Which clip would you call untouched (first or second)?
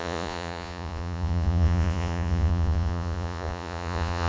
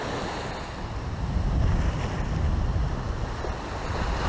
second